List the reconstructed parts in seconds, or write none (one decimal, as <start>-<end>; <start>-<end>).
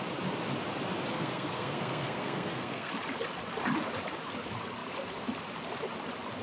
1.1-2.9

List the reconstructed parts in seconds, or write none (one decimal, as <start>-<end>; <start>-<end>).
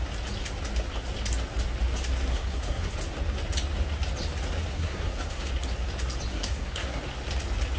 2.3-2.9; 4.7-5.5; 6.3-7.0